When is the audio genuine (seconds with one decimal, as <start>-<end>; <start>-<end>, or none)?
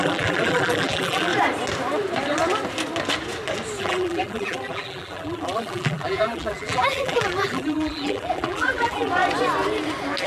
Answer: 1.3-3.8; 9.1-10.3